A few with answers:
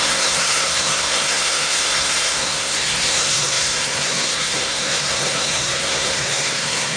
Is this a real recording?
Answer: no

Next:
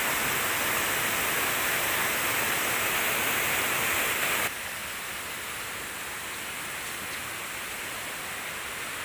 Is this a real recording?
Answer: yes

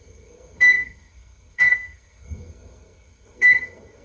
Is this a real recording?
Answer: no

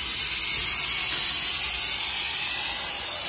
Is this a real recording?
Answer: yes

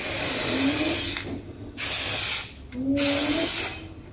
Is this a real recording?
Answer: yes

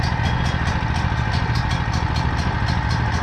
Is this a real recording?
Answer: yes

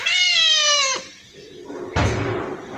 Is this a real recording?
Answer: no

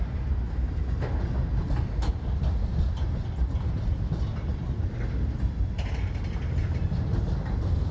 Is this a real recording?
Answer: yes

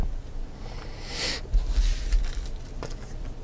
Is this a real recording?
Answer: yes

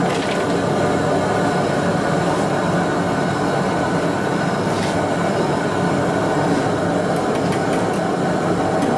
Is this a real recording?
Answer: yes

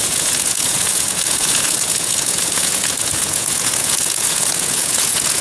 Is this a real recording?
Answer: no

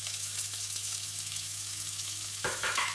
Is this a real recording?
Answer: no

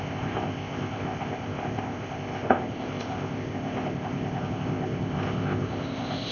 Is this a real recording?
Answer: no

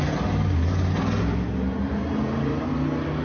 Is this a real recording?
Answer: yes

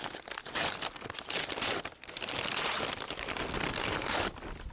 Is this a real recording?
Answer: yes